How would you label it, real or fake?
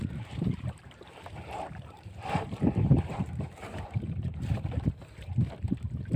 fake